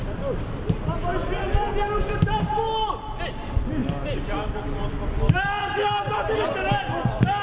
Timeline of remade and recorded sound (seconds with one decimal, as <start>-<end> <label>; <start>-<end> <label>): 0.0-7.4 recorded